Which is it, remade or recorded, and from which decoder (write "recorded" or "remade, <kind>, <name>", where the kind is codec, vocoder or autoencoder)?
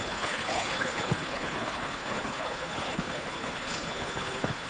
remade, codec, HILCodec